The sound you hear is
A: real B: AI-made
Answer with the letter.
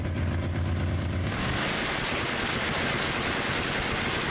A